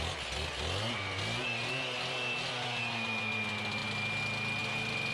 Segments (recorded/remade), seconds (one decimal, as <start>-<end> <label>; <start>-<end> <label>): 0.0-5.1 recorded